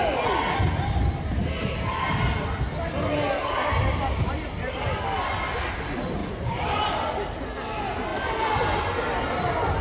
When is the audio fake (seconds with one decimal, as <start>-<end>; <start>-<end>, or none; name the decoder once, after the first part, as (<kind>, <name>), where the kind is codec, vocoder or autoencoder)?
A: none